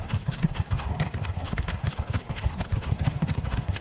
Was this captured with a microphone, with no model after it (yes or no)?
no